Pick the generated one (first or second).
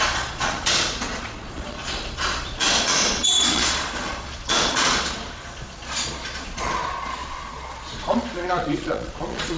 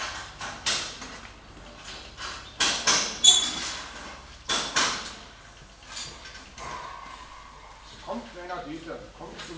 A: first